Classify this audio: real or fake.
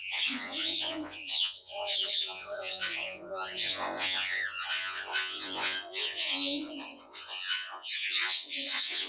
fake